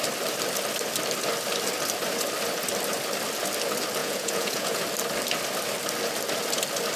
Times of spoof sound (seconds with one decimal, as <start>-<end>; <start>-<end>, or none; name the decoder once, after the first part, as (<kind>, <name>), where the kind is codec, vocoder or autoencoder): 4.0-4.8 (vocoder, Vocos)